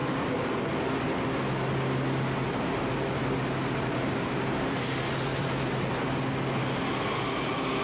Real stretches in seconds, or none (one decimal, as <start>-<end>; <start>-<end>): 0.0-5.3; 5.9-7.8